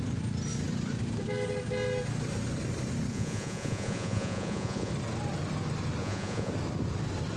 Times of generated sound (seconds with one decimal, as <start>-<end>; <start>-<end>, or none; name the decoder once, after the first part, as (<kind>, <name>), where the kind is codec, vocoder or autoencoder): 3.1-4.9 (vocoder, Vocos); 6.0-6.5